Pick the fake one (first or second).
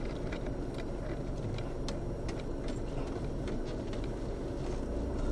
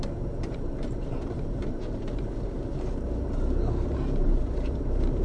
second